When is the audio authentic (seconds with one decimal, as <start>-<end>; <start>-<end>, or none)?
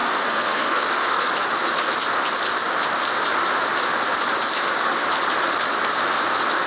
1.3-6.7